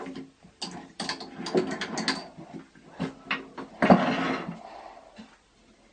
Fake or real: real